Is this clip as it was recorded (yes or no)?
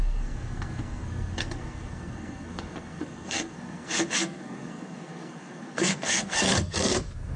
no